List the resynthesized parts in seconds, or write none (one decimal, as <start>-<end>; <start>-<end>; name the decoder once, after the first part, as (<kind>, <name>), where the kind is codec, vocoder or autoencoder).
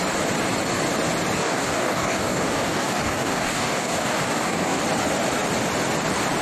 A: 1.4-4.8 (codec, DAC)